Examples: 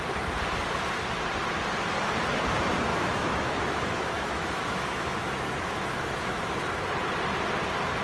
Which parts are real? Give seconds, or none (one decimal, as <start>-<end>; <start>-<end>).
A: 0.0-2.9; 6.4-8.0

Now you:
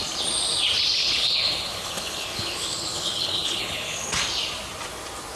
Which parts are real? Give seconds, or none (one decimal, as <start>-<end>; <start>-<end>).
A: 0.0-1.0; 4.2-5.4

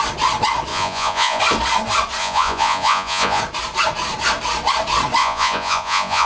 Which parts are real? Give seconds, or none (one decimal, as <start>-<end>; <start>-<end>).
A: 0.0-0.7; 1.4-2.2; 3.4-5.2

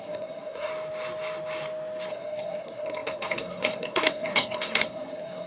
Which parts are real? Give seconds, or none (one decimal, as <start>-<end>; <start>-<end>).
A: 0.7-2.1

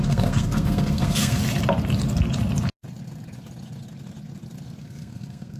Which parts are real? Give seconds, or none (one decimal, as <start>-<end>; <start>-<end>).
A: 1.4-4.8

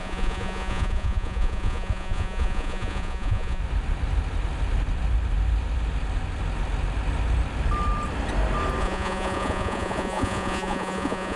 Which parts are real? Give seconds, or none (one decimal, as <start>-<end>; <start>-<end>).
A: 3.6-8.8

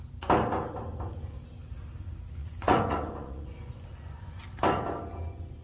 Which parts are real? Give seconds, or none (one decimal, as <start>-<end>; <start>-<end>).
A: 0.0-2.4; 4.4-5.6

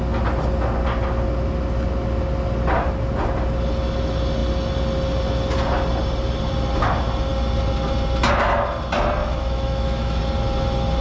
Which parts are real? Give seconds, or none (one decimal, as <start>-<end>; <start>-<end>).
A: 0.0-9.2; 10.2-11.0